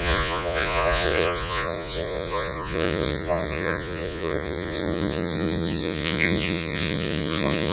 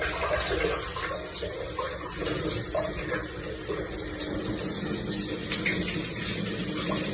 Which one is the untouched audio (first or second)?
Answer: second